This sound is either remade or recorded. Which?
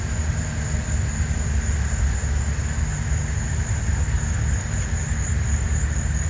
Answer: recorded